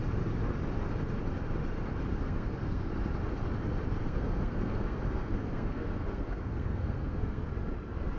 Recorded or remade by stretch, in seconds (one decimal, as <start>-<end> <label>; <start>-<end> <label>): 0.0-2.1 recorded; 2.1-2.9 remade; 2.9-4.0 recorded; 4.0-7.5 remade; 7.5-8.2 recorded